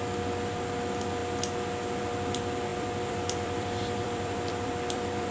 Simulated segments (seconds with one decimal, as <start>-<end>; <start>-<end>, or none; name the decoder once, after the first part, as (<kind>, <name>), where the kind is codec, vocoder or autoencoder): 2.7-5.3 (vocoder, BigVGAN v2)

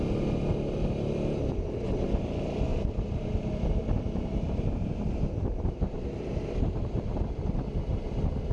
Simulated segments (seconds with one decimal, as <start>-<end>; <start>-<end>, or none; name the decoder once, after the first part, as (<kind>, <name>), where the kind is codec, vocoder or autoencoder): 2.7-7.2 (vocoder, BigVGAN v2)